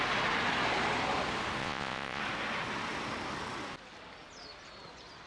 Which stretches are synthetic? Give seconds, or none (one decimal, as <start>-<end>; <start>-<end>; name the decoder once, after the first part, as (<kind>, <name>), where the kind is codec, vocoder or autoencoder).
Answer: 1.6-2.2 (vocoder, Vocos)